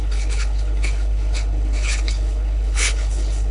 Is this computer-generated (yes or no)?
yes